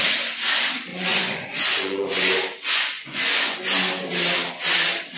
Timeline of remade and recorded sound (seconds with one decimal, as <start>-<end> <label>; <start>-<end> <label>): 0.0-0.9 recorded; 0.9-3.6 remade; 3.6-5.2 recorded